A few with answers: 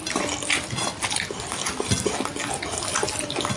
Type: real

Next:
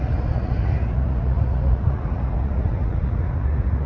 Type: fake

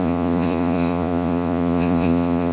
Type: fake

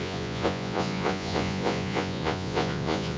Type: fake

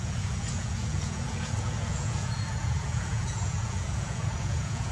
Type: fake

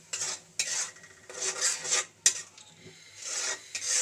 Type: real